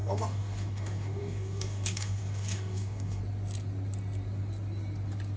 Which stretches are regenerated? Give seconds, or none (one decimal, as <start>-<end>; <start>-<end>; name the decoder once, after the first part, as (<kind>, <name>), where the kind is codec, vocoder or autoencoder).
0.0-3.2 (codec, DAC)

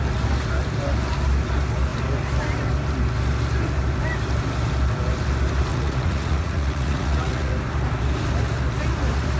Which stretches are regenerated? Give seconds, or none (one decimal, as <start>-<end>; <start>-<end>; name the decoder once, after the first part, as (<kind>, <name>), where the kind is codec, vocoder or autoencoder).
5.7-7.5 (vocoder, Vocos)

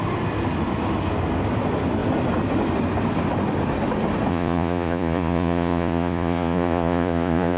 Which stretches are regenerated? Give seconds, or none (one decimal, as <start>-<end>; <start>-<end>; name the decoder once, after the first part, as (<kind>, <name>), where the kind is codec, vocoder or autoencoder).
4.3-7.6 (vocoder, Vocos)